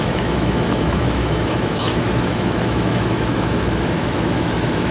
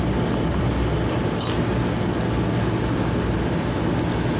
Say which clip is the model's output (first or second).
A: first